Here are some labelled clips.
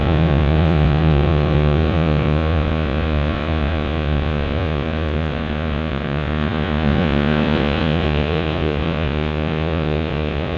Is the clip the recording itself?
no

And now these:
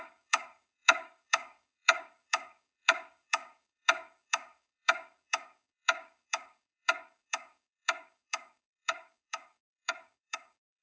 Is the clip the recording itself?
no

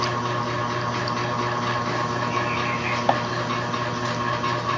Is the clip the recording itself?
yes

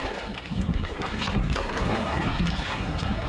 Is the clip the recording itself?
no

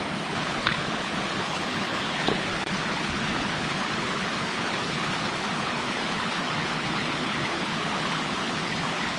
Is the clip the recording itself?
no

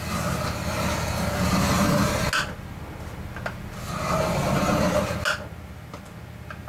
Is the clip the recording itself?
yes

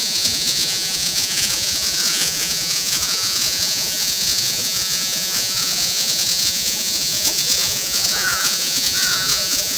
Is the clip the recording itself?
no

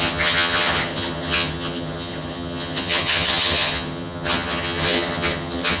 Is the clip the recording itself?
no